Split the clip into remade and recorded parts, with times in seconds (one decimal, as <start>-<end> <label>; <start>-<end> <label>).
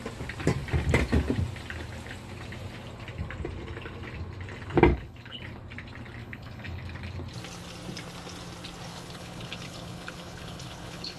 0.0-4.9 recorded; 4.9-5.4 remade; 5.4-6.2 recorded; 6.2-6.8 remade; 6.8-8.9 recorded; 8.9-11.2 remade